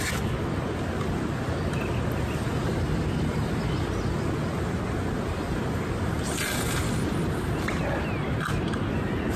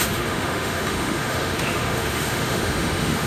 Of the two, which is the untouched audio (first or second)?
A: first